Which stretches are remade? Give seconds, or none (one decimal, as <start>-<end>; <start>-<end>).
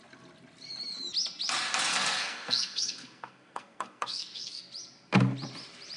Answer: 1.9-4.6